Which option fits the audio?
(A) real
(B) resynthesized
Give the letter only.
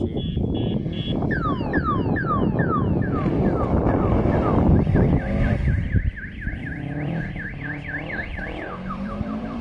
B